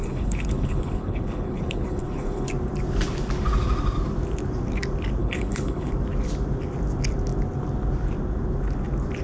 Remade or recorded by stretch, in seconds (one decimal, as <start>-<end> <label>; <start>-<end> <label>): 0.0-2.5 remade; 2.5-5.2 recorded; 5.2-5.9 remade; 5.9-9.2 recorded